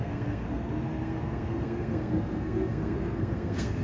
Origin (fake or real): fake